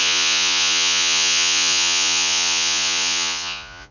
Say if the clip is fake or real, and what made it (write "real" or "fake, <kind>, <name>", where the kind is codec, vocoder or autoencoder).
fake, vocoder, Vocos